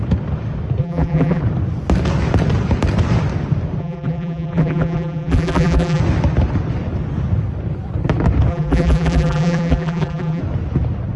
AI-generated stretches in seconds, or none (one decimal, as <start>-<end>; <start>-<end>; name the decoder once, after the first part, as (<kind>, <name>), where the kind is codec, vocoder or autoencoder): 0.8-1.4 (vocoder, BigVGAN v2); 3.8-6.0; 8.5-10.4